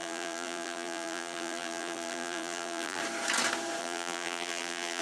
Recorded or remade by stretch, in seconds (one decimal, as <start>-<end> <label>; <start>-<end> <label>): 0.0-3.0 remade; 3.0-3.8 recorded; 3.8-5.0 remade